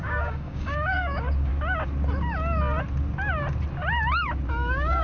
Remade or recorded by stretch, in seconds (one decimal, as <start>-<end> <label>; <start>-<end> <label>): 0.0-1.5 remade; 1.5-4.5 recorded; 4.5-5.0 remade